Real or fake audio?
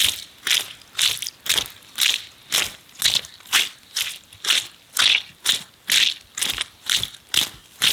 real